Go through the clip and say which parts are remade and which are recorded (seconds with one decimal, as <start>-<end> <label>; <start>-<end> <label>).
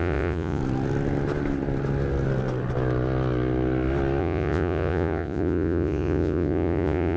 0.0-0.6 remade; 0.6-4.2 recorded; 4.2-7.2 remade